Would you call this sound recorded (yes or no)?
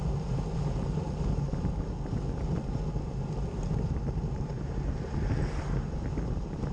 yes